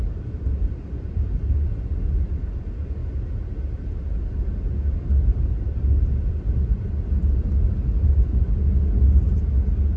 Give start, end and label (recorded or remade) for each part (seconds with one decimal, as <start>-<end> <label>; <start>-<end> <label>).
0.0-10.0 recorded